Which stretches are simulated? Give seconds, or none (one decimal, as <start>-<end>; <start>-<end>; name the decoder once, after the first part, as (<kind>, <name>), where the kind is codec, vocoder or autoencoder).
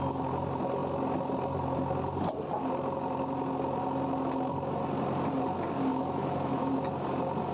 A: 5.9-6.7 (autoencoder, DAC-VAE)